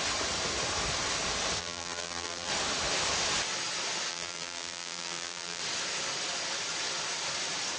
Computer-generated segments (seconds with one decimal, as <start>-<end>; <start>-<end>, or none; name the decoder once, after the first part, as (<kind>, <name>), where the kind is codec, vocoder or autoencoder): 1.6-2.5 (vocoder, BigVGAN v2); 4.1-5.6